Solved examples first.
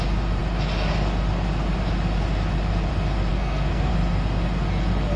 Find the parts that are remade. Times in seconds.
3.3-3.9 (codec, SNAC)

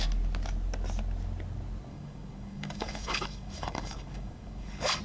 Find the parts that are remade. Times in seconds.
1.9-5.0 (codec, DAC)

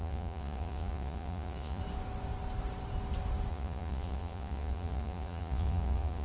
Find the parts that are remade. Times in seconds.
0.0-1.8 (vocoder, Vocos); 3.5-6.2